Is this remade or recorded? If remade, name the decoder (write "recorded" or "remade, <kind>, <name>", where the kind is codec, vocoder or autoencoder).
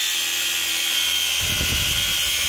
remade, vocoder, BigVGAN v2